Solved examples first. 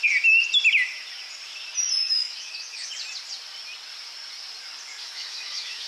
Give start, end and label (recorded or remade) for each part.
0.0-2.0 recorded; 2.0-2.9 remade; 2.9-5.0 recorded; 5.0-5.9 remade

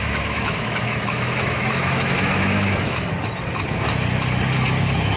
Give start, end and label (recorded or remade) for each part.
0.0-3.1 remade; 3.1-5.2 recorded

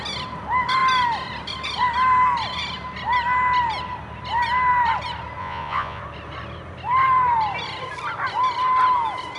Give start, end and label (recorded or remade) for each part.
0.0-5.4 recorded; 5.4-6.0 remade; 6.0-9.4 recorded